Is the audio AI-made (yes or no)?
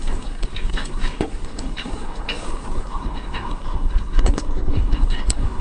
yes